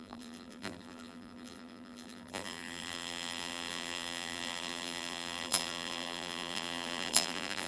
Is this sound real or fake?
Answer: fake